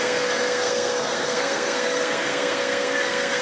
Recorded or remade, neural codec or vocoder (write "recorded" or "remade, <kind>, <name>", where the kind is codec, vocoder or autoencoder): remade, codec, SNAC